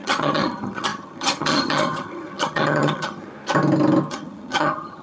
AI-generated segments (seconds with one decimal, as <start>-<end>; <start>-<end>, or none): 0.0-3.3; 4.1-5.0